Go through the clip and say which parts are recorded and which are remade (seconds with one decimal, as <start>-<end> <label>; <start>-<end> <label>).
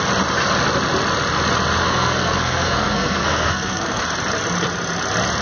0.0-1.8 recorded; 1.8-4.0 remade; 4.0-5.4 recorded